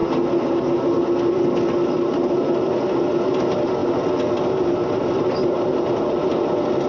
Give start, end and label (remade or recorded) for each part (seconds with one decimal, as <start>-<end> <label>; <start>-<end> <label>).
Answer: 0.0-6.9 recorded